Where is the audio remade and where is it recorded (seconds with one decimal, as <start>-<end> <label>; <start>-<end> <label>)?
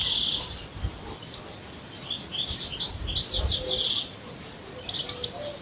0.0-3.4 recorded; 3.4-5.6 remade